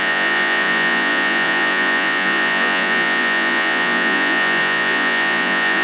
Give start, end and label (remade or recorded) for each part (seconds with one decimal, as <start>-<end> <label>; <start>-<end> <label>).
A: 0.0-5.8 remade